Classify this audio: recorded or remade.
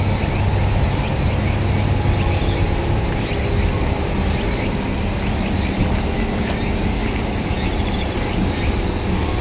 recorded